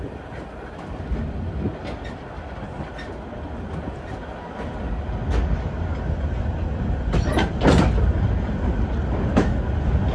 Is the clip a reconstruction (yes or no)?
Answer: no